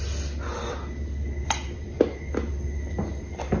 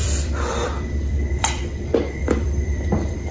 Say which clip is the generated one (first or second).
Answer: second